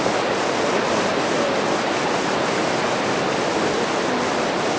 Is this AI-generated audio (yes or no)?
no